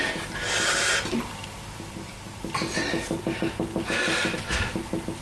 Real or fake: real